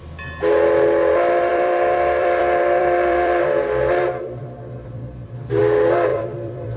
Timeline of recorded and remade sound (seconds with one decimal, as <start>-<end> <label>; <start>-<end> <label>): 0.0-1.5 recorded; 1.5-5.6 remade; 5.6-6.1 recorded; 6.1-6.8 remade

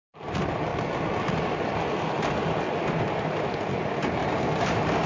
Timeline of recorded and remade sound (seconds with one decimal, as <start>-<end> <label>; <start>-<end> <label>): 0.0-4.2 recorded; 4.2-5.1 remade